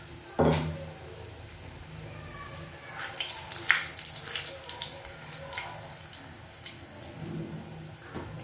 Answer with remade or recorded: recorded